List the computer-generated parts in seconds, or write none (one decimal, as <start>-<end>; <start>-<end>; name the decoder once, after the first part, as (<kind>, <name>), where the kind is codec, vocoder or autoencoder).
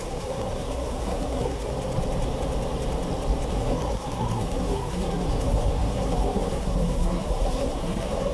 0.0-1.7 (codec, SNAC); 3.5-8.3